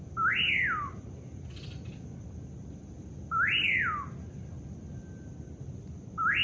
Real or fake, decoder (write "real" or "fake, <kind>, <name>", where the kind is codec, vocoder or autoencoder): real